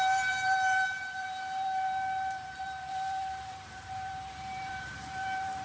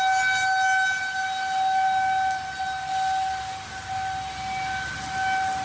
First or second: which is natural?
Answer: second